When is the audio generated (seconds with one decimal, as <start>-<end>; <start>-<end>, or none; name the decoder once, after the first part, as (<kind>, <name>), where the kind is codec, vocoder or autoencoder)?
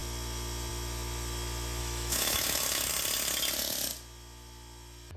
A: 1.8-2.9 (autoencoder, DAC-VAE)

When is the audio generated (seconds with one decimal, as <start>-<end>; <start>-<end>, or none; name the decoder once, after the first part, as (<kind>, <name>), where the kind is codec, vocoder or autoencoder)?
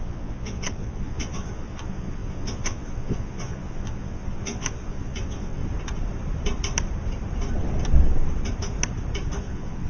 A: 0.0-5.6 (vocoder, Vocos); 9.4-9.9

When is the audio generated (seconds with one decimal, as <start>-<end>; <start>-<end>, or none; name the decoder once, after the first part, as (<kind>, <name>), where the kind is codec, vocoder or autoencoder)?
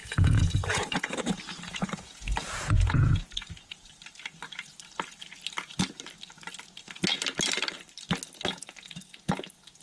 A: 0.0-3.9 (vocoder, Vocos)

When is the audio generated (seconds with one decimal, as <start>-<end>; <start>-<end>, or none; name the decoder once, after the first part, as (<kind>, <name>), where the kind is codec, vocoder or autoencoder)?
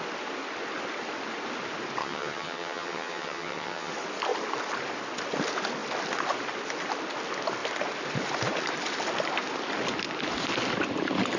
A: 2.0-3.9 (vocoder, HiFi-GAN)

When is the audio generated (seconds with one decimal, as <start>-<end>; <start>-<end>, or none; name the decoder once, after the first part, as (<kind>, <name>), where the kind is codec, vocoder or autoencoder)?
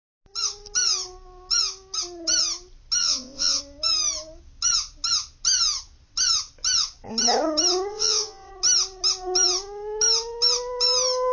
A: 3.0-3.6 (vocoder, WaveNeXt); 7.9-8.5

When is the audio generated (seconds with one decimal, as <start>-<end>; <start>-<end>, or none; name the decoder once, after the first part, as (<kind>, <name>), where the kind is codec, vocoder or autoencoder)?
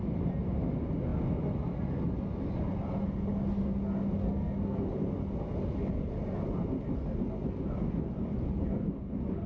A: 4.2-4.9 (codec, SNAC)